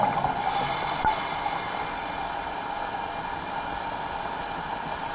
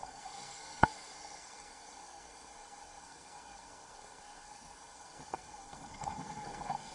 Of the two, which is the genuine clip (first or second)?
first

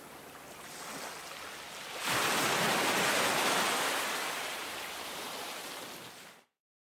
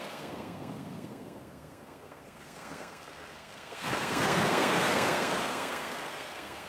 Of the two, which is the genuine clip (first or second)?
first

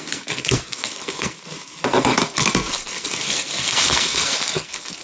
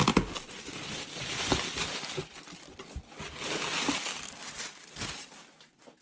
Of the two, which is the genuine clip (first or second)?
second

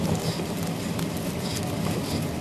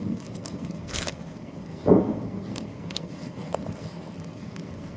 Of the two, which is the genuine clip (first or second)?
first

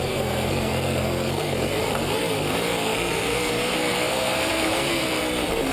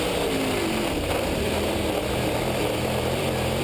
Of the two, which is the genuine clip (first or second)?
second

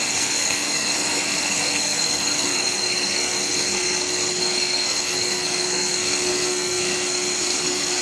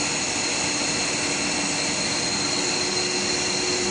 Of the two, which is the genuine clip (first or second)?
second